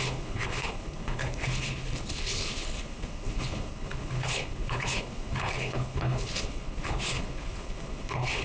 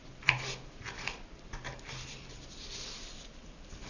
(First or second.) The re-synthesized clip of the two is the first